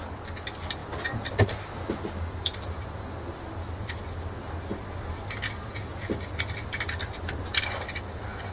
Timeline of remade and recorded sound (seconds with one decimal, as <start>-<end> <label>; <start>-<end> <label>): 0.0-8.5 recorded